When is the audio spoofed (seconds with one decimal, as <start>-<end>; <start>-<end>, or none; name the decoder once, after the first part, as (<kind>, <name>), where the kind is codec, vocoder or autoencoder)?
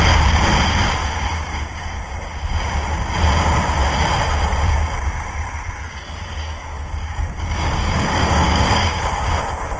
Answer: 1.0-2.0 (codec, DAC); 5.9-9.2